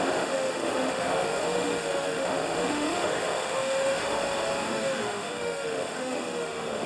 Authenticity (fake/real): fake